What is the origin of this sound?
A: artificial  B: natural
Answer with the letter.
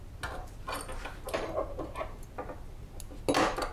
B